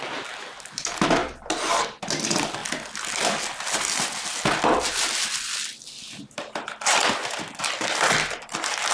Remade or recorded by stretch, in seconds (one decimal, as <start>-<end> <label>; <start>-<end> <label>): 0.0-8.9 recorded